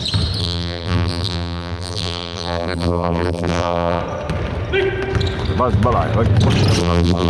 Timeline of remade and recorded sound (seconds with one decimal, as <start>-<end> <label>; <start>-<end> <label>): 0.0-0.4 recorded; 0.4-4.0 remade; 4.0-6.8 recorded; 6.8-7.3 remade